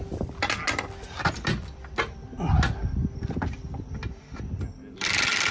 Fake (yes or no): no